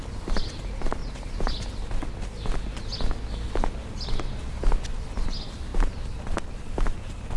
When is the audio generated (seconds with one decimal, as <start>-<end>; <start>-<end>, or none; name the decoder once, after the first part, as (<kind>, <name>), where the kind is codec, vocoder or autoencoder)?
none